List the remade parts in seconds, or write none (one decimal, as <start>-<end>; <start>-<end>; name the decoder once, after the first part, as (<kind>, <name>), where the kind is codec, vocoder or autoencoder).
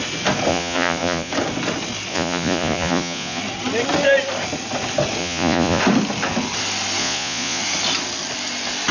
0.5-1.3 (vocoder, Vocos); 2.1-3.4; 5.2-5.8; 7.0-7.6